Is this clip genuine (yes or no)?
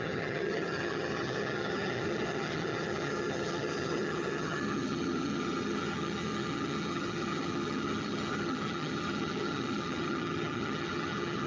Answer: no